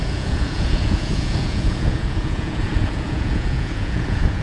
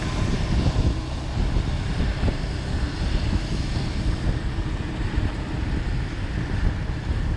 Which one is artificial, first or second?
first